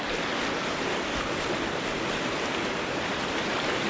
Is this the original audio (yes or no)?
yes